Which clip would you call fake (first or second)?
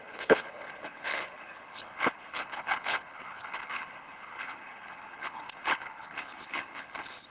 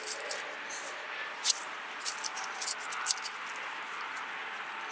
first